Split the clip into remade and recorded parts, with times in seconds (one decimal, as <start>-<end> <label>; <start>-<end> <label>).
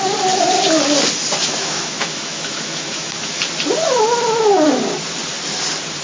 0.0-1.4 recorded; 1.4-3.4 remade; 3.4-6.0 recorded